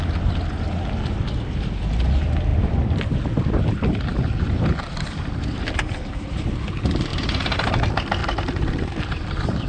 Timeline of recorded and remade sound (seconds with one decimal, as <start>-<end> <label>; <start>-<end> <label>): 0.0-7.1 recorded; 7.1-7.7 remade; 7.7-8.2 recorded; 8.2-9.7 remade